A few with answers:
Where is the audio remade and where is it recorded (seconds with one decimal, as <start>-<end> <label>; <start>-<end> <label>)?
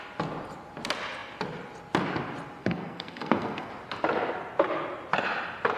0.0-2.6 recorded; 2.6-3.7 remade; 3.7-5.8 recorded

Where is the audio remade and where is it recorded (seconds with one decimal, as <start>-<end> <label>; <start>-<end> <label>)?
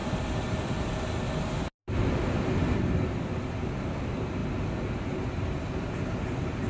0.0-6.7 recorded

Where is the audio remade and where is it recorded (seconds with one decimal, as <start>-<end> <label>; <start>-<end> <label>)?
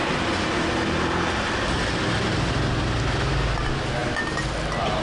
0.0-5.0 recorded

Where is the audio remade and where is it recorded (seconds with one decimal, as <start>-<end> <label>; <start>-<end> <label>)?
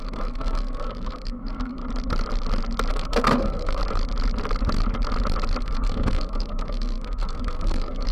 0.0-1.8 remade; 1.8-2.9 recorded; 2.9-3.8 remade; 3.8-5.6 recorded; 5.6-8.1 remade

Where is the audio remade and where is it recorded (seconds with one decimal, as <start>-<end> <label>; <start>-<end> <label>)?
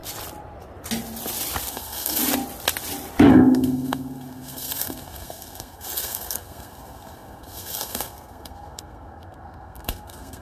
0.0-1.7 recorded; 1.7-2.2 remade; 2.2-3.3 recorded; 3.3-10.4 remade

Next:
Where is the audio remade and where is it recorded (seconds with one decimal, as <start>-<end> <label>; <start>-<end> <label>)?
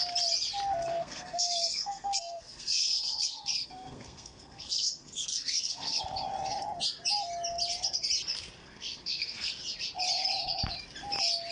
0.0-0.9 recorded; 0.9-6.0 remade; 6.0-8.6 recorded; 8.6-9.5 remade; 9.5-11.5 recorded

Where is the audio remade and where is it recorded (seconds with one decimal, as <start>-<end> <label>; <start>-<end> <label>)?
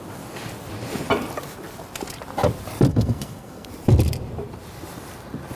0.0-2.9 recorded; 2.9-3.7 remade; 3.7-5.6 recorded